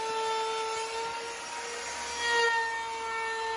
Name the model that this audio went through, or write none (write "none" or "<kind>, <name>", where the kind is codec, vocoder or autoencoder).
none